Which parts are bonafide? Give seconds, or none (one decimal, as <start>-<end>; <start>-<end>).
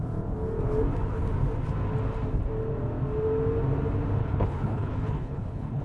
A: 0.0-4.2